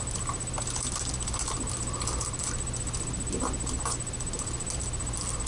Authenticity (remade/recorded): recorded